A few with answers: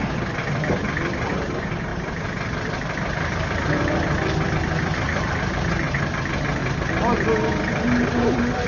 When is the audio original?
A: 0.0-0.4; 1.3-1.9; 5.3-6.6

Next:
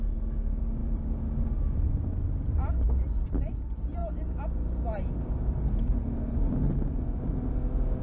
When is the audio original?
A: 4.0-7.5

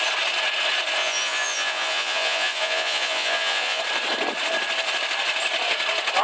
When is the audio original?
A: 0.0-1.0; 3.8-6.2

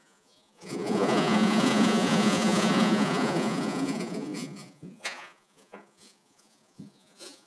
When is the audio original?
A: none

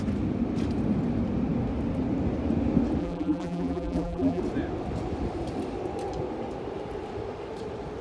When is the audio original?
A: 0.0-3.0; 4.4-8.0

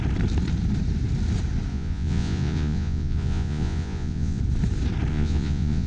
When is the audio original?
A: 0.0-1.7; 4.4-5.1

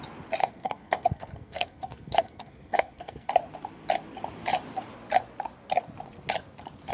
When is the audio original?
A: 0.0-0.4; 3.3-6.9

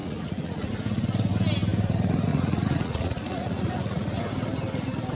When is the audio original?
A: 0.7-2.3; 4.2-5.1